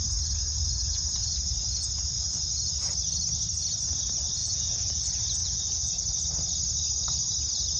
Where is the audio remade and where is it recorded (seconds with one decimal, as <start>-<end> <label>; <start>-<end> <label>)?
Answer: 0.0-4.4 recorded; 4.4-5.0 remade; 5.0-5.4 recorded; 5.4-5.9 remade; 5.9-7.8 recorded